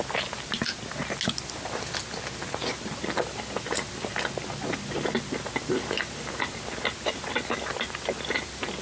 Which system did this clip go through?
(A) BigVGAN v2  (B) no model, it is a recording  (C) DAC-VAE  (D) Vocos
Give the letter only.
B